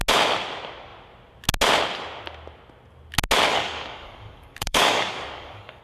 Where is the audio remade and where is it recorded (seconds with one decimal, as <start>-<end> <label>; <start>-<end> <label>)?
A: 0.0-3.5 recorded; 3.5-5.8 remade